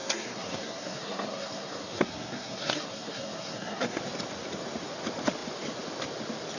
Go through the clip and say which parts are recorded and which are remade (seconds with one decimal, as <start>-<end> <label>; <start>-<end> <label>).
0.0-4.0 remade; 4.0-6.6 recorded